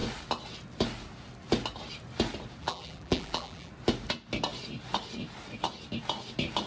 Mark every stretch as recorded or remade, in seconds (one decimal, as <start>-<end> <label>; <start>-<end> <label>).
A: 0.0-2.6 recorded; 2.6-3.7 remade; 3.7-6.7 recorded